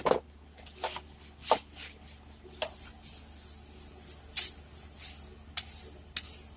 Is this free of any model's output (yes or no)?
yes